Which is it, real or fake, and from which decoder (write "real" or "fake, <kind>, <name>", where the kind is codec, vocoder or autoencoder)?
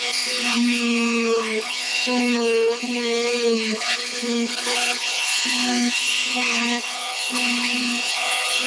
fake, codec, HILCodec